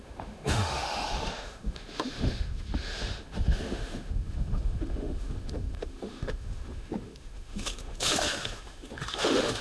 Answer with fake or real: fake